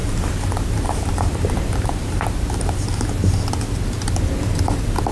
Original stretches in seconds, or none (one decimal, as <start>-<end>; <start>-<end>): 3.1-5.1